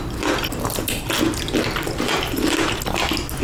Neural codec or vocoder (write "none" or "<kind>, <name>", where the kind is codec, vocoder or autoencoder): none